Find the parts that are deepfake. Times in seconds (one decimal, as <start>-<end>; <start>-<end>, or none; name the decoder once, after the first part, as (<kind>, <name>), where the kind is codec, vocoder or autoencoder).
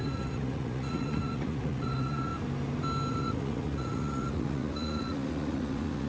0.0-2.3 (vocoder, Vocos); 3.1-6.1